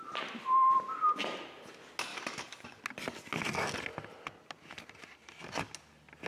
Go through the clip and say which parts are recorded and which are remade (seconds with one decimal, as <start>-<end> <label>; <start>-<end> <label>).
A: 0.0-2.1 recorded; 2.1-2.8 remade; 2.8-6.3 recorded